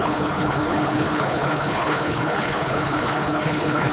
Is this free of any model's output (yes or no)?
no